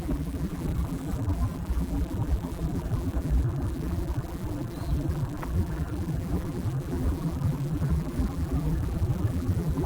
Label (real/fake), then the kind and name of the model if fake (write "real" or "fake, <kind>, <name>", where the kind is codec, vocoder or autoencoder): fake, vocoder, BigVGAN v2